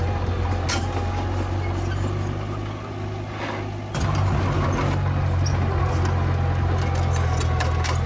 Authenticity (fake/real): real